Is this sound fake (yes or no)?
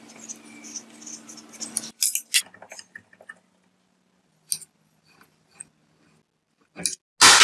no